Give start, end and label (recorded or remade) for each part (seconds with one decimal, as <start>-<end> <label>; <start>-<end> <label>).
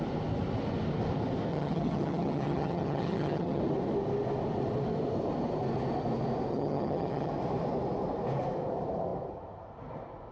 0.0-1.5 recorded; 1.5-3.6 remade; 3.6-6.5 recorded; 6.5-7.3 remade; 7.3-10.3 recorded